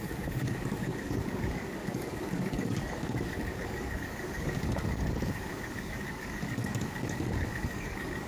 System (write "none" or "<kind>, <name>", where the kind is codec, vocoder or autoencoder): codec, DAC